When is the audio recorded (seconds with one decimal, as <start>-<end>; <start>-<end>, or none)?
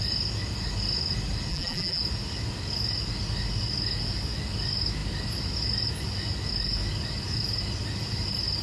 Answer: 0.0-1.5; 2.0-8.6